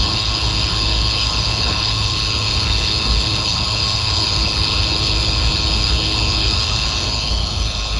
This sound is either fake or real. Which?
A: fake